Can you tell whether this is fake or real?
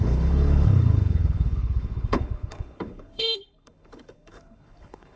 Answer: fake